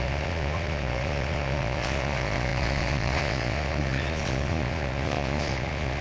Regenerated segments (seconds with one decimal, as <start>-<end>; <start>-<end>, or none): 0.0-6.0